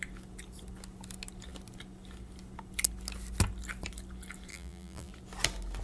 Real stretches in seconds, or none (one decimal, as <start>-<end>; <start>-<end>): 0.0-4.5; 5.1-5.8